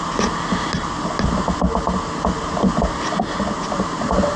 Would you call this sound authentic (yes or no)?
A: yes